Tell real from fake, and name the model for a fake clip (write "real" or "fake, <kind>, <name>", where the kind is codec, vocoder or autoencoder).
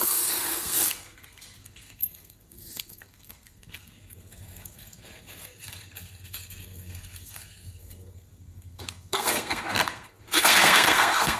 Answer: fake, codec, SNAC